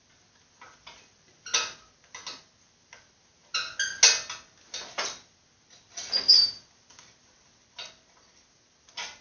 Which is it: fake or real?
real